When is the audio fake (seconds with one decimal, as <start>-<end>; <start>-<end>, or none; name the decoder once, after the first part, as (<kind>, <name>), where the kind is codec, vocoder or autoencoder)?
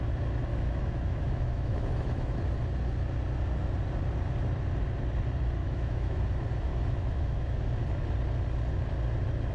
0.5-2.4 (autoencoder, DAC-VAE); 5.6-6.2; 6.7-7.6